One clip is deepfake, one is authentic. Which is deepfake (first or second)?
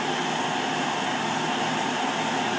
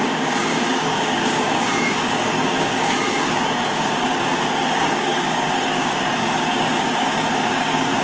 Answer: second